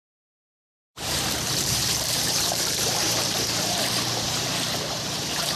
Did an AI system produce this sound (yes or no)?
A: yes